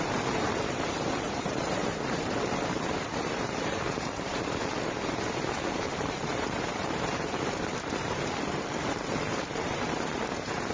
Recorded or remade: remade